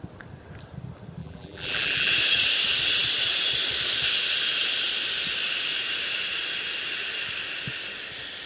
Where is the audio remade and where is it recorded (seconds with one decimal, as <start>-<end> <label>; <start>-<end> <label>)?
0.0-1.2 recorded; 1.2-2.1 remade; 2.1-8.5 recorded